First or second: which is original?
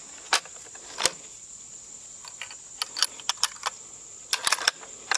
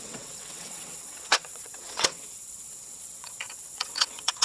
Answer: first